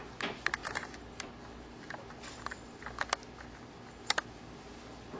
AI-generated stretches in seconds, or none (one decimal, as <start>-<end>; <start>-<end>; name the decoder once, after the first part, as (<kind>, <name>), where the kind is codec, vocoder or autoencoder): none